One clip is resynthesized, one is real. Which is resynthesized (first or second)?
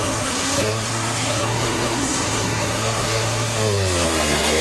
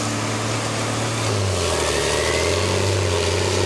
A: first